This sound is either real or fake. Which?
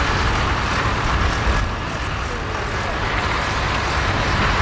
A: real